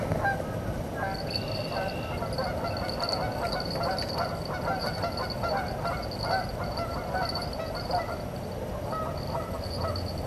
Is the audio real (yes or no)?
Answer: yes